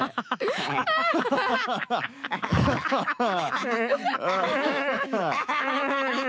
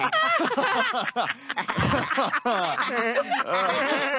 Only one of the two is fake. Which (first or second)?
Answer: first